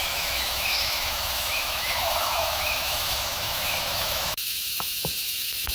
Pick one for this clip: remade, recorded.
remade